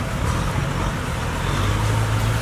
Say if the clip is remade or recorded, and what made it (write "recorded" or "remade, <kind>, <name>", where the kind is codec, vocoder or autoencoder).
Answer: recorded